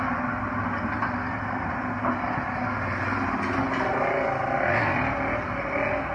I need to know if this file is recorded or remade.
recorded